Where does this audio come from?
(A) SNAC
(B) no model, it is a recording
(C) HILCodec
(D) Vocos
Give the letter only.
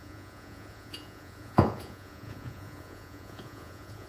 D